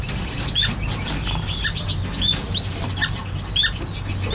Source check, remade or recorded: recorded